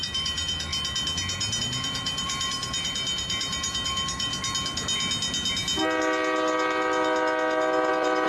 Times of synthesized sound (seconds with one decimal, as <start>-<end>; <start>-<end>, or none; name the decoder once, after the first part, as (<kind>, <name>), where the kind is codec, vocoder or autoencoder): 0.0-0.7 (vocoder, BigVGAN v2); 1.6-4.3; 7.9-8.3